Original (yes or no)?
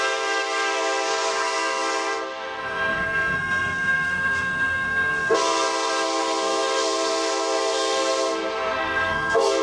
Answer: no